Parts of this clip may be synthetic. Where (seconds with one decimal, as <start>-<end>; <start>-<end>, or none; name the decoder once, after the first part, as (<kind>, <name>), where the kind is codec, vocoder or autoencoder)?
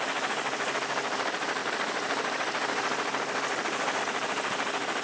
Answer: 0.0-5.0 (vocoder, BigVGAN v2)